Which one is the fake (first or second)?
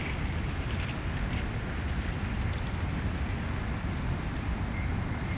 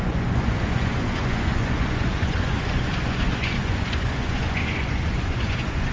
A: second